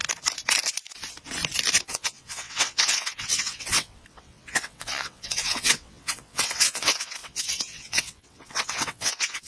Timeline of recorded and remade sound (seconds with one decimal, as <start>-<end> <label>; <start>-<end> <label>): 0.0-1.8 recorded; 1.8-9.5 remade